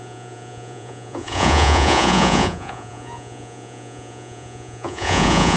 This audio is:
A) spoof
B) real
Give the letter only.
A